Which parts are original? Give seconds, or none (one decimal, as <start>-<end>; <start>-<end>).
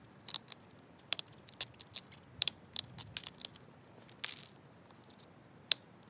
0.0-6.1